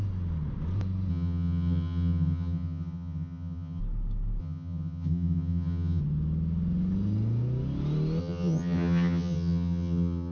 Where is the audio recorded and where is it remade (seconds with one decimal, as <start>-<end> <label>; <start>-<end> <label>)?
0.0-1.1 recorded; 1.1-3.8 remade; 3.8-4.4 recorded; 4.4-6.0 remade; 6.0-8.2 recorded; 8.2-10.3 remade